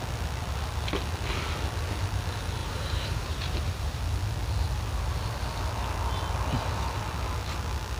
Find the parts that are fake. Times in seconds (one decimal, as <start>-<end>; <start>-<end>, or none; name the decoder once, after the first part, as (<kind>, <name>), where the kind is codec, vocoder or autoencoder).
2.6-4.0 (vocoder, BigVGAN v2)